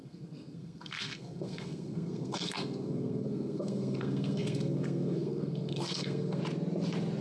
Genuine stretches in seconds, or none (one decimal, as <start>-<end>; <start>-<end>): 6.4-7.2